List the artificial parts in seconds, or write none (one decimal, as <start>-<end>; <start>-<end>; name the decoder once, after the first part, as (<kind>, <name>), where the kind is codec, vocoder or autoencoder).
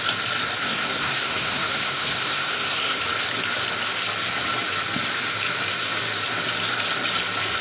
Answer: 0.6-3.0 (codec, SNAC)